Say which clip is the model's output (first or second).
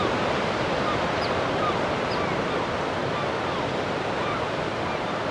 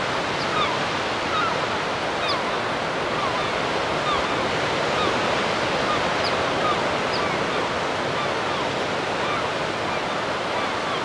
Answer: first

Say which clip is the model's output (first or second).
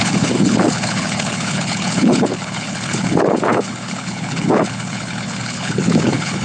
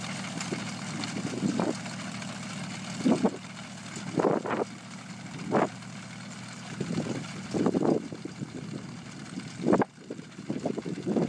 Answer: first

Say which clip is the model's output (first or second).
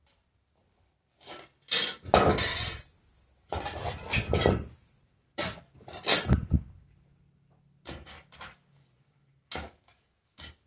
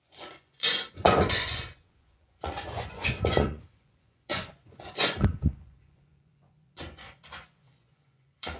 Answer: second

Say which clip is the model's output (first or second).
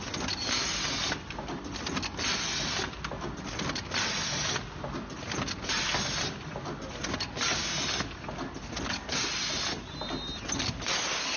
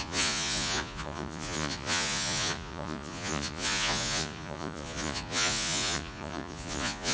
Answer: second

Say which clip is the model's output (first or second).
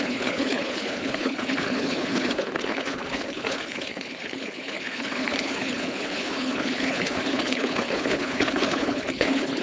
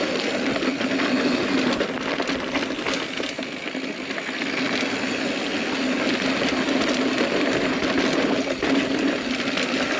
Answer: first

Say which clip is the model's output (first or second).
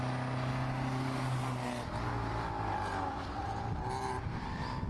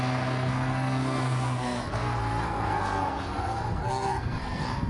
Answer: second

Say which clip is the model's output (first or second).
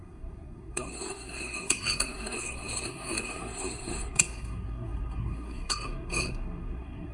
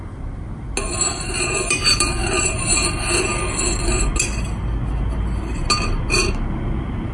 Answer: first